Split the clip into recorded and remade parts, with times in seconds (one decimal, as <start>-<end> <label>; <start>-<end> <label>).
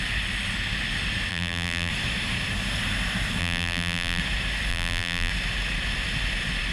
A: 0.0-1.3 recorded; 1.3-1.9 remade; 1.9-3.4 recorded; 3.4-4.2 remade; 4.2-4.7 recorded; 4.7-5.3 remade; 5.3-6.7 recorded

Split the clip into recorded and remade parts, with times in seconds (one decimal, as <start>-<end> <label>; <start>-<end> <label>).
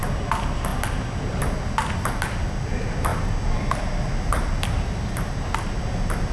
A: 0.0-6.3 recorded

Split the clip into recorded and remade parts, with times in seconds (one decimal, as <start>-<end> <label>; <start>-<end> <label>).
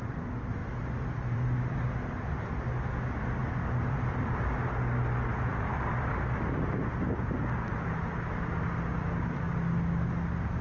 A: 0.0-0.6 recorded; 0.6-1.9 remade; 1.9-3.4 recorded; 3.4-4.4 remade; 4.4-5.5 recorded; 5.5-6.9 remade; 6.9-10.6 recorded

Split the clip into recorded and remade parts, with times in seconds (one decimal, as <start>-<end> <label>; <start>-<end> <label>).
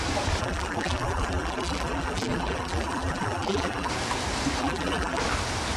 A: 0.0-0.4 recorded; 0.4-3.9 remade; 3.9-4.6 recorded; 4.6-5.2 remade; 5.2-5.8 recorded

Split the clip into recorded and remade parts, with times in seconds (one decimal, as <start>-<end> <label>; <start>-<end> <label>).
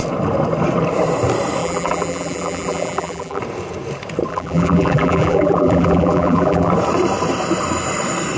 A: 0.0-1.6 recorded; 1.6-3.4 remade; 3.4-4.3 recorded; 4.3-6.7 remade; 6.7-8.4 recorded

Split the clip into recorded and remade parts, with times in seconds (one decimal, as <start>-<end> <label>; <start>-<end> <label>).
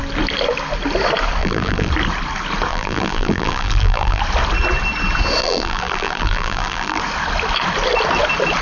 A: 0.0-1.4 recorded; 1.4-1.9 remade; 1.9-2.7 recorded; 2.7-4.2 remade; 4.2-5.4 recorded; 5.4-7.0 remade; 7.0-8.6 recorded